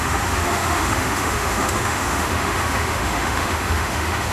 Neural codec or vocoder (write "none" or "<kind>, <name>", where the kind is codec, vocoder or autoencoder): autoencoder, DAC-VAE